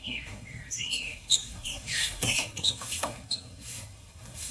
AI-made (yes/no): yes